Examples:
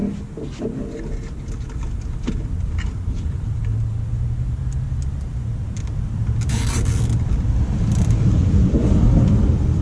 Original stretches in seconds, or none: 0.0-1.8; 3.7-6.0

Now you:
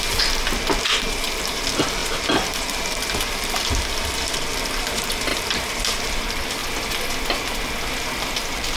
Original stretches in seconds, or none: 6.6-8.3

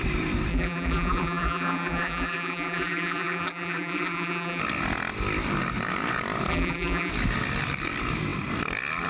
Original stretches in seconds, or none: 0.0-0.5; 4.6-6.5; 7.1-9.1

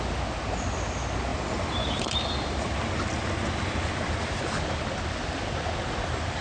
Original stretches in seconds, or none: 0.0-1.3; 4.7-6.4

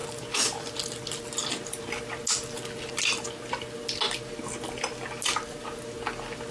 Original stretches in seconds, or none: 0.0-6.5

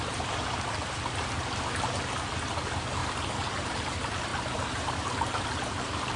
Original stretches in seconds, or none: 0.0-3.0; 3.9-4.3; 5.4-6.2

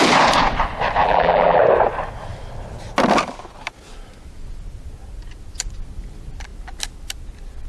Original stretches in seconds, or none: 0.0-1.0; 1.6-7.7